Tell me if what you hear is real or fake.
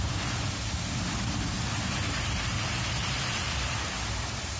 real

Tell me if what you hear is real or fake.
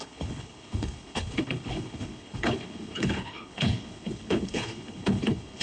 fake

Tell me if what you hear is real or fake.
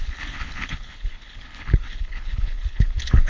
fake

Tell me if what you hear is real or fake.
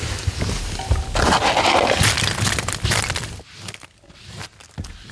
real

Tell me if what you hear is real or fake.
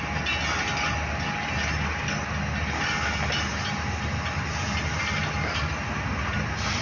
real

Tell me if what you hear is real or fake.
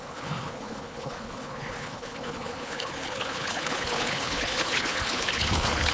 fake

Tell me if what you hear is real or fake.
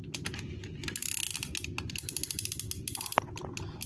real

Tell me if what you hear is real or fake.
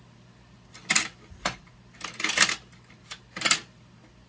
real